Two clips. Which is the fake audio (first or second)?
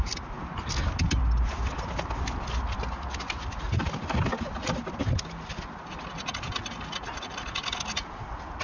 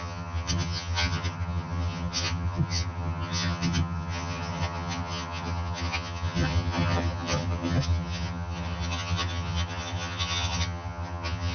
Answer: second